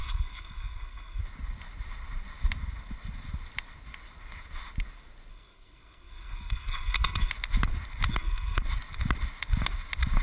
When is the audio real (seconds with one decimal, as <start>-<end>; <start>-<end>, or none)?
1.2-5.3; 7.3-8.1; 8.6-10.2